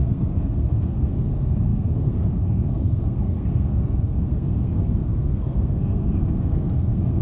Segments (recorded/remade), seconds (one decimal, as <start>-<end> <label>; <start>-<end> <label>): 0.0-7.2 remade